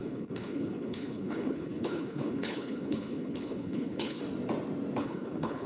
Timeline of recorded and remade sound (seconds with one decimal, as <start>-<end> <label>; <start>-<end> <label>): 0.0-4.2 remade; 4.2-5.0 recorded; 5.0-5.7 remade